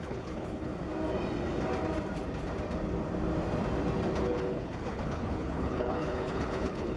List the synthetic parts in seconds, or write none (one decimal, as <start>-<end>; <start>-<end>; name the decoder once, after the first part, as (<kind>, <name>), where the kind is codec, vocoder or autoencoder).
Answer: 0.0-0.7 (codec, HILCodec); 4.2-7.0